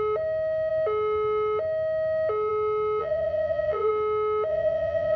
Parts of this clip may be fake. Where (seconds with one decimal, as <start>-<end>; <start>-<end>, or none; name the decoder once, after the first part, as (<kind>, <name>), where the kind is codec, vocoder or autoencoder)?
3.0-3.9 (vocoder, Vocos); 4.5-5.2